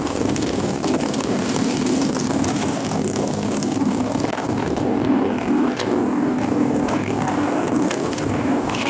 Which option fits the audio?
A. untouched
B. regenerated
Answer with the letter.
B